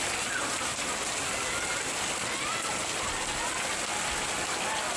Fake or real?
real